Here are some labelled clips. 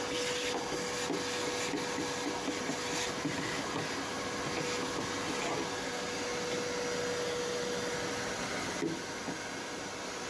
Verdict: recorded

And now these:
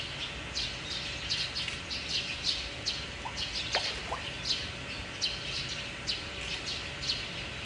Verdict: recorded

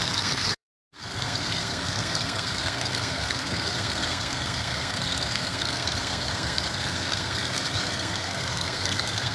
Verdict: remade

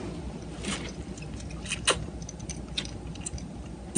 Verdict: recorded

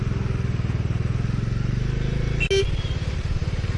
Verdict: recorded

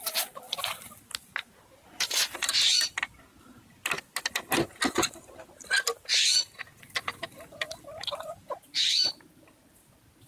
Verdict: recorded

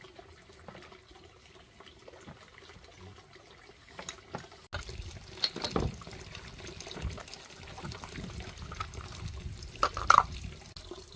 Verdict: recorded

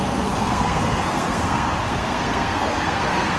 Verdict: remade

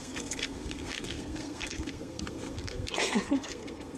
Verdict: remade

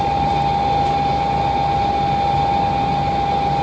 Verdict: recorded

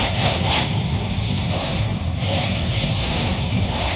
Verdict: remade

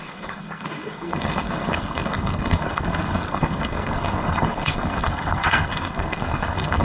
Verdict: remade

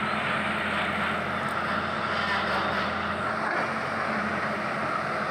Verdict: recorded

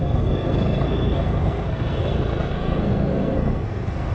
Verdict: remade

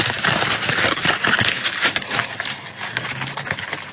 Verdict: recorded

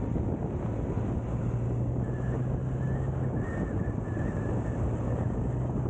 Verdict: recorded